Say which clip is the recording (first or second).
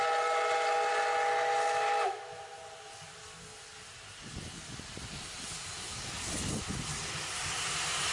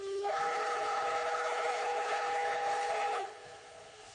first